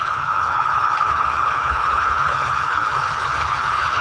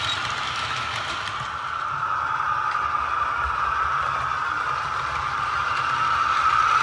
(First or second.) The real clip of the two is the second